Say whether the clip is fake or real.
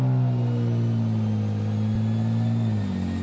real